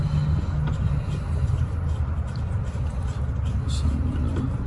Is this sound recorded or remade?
recorded